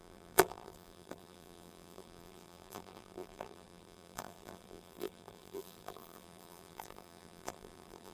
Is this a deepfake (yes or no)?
yes